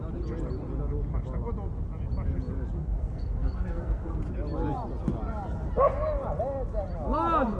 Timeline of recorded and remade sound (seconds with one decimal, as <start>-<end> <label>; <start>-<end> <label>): 0.0-2.8 recorded; 2.8-4.2 remade; 4.2-7.6 recorded